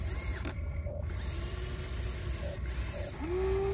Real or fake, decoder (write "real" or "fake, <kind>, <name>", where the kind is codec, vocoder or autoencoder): real